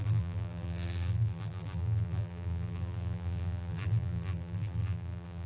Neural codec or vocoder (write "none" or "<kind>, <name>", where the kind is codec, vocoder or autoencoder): vocoder, BigVGAN v2